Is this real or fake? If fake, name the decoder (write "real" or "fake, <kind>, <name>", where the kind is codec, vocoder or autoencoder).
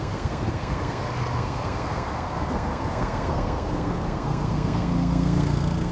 fake, codec, SNAC